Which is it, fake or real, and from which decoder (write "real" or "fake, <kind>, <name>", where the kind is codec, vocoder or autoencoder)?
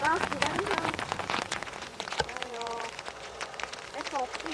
fake, vocoder, Vocos